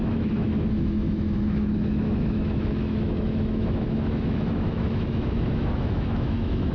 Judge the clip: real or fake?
fake